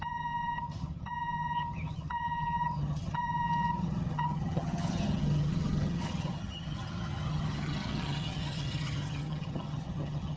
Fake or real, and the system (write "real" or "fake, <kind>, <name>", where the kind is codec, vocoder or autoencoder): fake, vocoder, HiFi-GAN